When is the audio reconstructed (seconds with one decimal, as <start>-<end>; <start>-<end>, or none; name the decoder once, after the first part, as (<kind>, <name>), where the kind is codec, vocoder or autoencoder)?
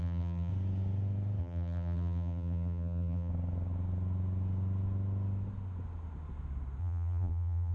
0.0-0.5 (vocoder, BigVGAN v2); 1.4-3.3; 6.8-7.7